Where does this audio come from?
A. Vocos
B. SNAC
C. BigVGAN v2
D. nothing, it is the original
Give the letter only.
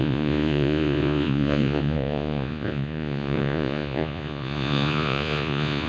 A